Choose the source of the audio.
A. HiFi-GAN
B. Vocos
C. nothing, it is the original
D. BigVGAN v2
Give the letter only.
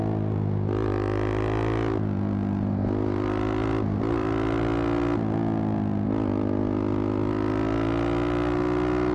C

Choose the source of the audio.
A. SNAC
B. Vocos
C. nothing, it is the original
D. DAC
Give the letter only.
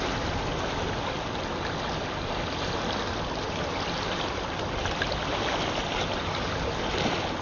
C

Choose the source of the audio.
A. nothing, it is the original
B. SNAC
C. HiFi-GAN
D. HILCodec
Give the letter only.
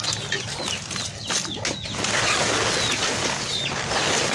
A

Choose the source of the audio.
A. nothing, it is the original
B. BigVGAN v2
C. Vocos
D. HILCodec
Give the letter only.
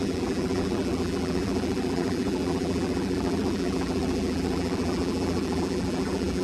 B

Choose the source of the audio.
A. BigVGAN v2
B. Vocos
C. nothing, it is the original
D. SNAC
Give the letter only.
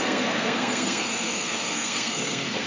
D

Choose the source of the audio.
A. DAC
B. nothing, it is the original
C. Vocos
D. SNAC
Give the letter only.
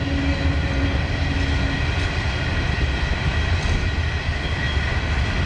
B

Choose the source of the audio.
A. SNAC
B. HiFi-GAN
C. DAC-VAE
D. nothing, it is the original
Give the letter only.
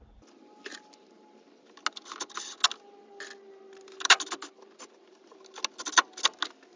D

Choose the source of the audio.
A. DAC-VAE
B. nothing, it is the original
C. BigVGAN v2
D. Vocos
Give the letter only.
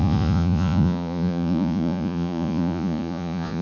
D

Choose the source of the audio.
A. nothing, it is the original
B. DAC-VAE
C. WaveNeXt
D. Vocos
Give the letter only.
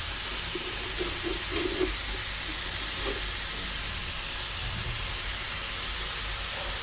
A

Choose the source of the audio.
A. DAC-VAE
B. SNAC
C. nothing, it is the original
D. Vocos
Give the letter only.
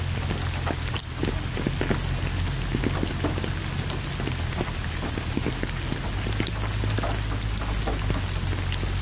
C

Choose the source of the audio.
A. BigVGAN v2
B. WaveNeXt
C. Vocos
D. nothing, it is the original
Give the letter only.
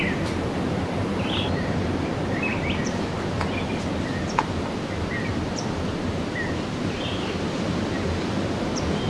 D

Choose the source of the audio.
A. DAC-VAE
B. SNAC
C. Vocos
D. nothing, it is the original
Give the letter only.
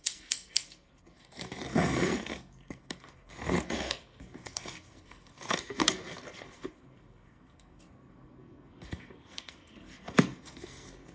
B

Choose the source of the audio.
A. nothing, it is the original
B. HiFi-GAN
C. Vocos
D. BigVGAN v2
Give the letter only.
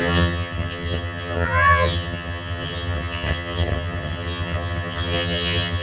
B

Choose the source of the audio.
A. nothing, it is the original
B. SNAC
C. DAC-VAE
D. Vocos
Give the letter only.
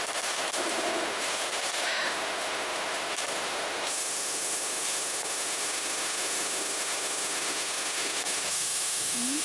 C